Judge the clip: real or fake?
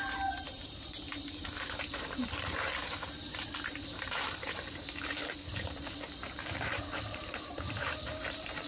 fake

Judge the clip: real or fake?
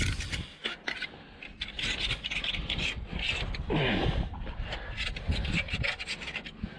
real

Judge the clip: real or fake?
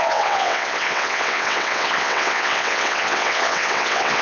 fake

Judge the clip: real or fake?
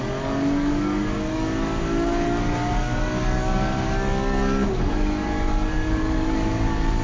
fake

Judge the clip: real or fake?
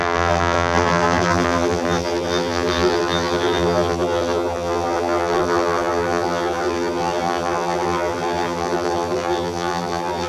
fake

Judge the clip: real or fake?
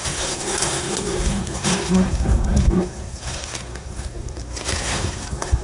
fake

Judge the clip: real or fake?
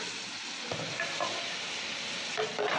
real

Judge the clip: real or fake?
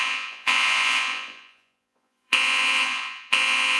fake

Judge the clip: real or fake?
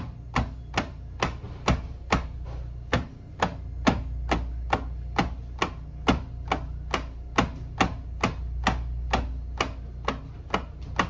real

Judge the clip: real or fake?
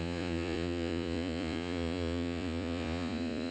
fake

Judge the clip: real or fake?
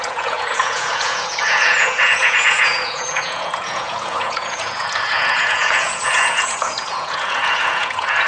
fake